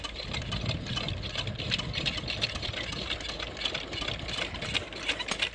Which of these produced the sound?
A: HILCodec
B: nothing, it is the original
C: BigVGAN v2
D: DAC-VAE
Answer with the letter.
B